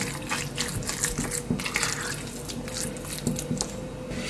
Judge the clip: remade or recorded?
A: recorded